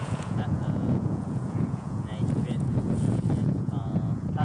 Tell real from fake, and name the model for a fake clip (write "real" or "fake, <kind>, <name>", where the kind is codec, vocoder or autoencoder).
fake, vocoder, Vocos